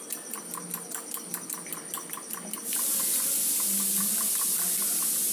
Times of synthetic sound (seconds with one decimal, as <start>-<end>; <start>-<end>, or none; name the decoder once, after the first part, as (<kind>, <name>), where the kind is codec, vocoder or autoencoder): 2.6-4.0 (vocoder, BigVGAN v2)